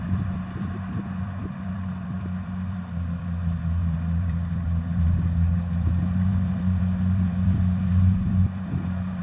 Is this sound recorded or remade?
remade